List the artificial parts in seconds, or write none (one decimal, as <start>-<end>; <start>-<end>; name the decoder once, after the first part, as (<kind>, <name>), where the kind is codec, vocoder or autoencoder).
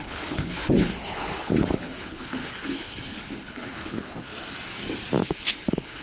0.0-4.3 (codec, HILCodec); 5.2-6.0